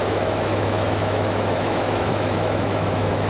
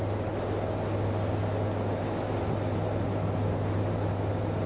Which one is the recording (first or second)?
second